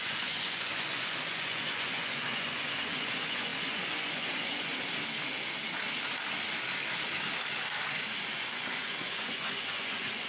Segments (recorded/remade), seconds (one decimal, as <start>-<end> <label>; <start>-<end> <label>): 0.0-4.7 remade; 4.7-7.9 recorded; 7.9-10.3 remade